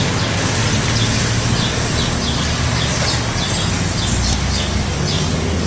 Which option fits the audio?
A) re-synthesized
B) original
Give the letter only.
B